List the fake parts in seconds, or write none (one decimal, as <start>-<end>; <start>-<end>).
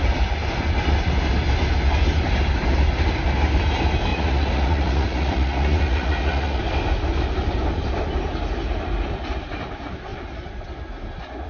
4.1-6.6